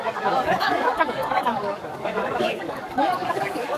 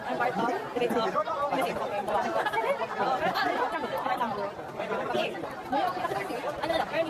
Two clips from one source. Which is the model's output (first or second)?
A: first